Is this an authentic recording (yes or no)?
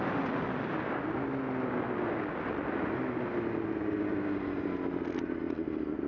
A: yes